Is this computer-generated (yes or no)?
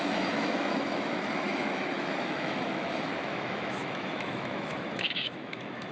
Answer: yes